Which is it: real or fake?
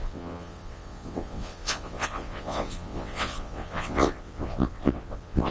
fake